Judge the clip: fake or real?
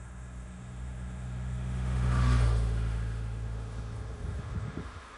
fake